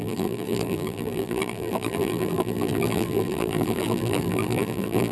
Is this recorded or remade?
remade